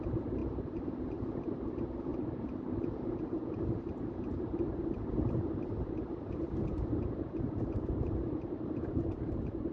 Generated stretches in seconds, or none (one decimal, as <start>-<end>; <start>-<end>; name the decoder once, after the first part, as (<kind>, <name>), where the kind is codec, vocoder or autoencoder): 0.0-9.7 (vocoder, BigVGAN v2)